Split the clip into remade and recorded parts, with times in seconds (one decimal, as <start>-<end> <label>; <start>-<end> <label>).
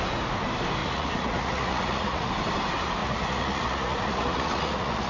0.0-0.8 recorded; 0.8-2.3 remade; 2.3-3.0 recorded; 3.0-5.1 remade